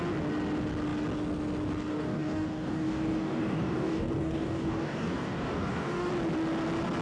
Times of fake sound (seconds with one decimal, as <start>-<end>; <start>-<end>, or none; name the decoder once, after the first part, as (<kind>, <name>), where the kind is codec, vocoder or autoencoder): 1.9-6.1 (codec, DAC)